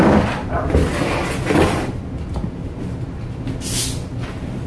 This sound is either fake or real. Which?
real